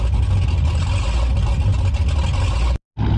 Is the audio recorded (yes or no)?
yes